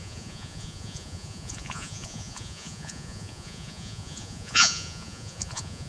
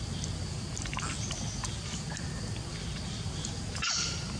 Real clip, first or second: second